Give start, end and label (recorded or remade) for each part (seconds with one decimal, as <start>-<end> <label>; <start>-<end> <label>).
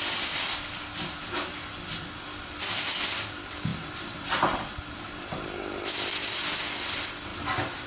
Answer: 0.0-3.7 recorded; 3.7-5.0 remade; 5.0-7.3 recorded; 7.3-7.9 remade